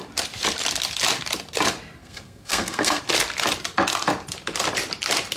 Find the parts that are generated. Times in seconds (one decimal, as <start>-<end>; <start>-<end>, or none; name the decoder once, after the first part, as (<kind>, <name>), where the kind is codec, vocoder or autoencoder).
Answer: 2.0-3.0 (codec, SNAC)